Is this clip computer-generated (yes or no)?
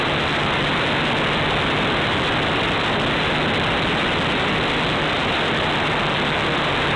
no